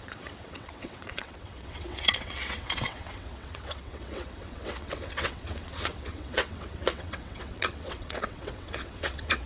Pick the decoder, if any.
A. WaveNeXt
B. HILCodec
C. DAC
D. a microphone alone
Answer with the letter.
A